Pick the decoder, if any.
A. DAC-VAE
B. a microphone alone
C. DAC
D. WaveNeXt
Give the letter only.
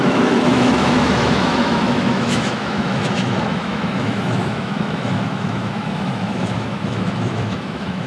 A